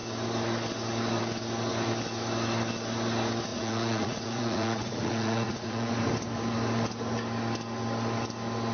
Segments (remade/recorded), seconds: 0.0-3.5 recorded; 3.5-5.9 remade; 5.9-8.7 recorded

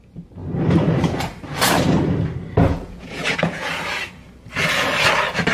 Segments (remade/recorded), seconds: 0.0-2.6 recorded; 2.6-3.7 remade; 3.7-5.5 recorded

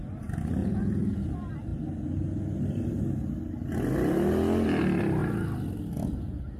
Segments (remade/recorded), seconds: 0.0-0.6 recorded; 0.6-1.2 remade; 1.2-6.6 recorded